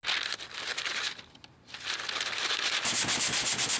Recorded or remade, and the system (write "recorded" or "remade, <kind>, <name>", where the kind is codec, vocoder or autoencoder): recorded